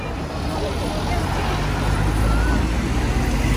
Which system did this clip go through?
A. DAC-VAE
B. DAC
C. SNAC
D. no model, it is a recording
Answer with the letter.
D